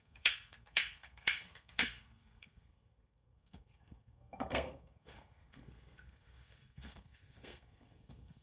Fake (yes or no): yes